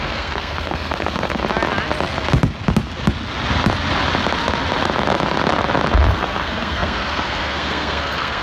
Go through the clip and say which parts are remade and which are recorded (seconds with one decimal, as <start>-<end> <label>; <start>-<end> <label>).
0.0-1.4 remade; 1.4-6.1 recorded; 6.1-8.4 remade